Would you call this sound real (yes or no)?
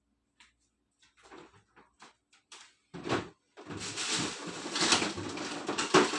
yes